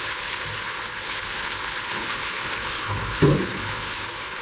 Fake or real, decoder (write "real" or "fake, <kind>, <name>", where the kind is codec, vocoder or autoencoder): fake, codec, HILCodec